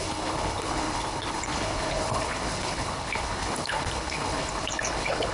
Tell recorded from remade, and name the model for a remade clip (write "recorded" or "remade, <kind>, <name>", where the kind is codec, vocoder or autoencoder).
remade, codec, HILCodec